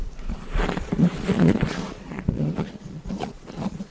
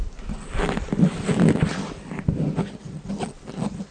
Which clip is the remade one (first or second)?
first